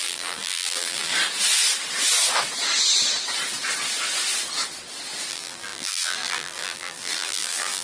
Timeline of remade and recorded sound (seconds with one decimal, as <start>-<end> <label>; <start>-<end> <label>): 0.0-1.1 remade; 1.1-5.3 recorded; 5.3-7.8 remade